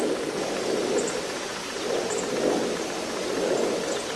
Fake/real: real